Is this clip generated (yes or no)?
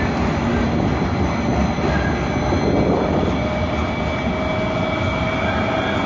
no